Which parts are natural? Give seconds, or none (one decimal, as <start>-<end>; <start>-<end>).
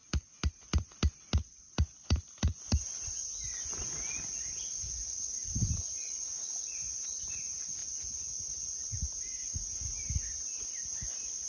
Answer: 0.0-11.5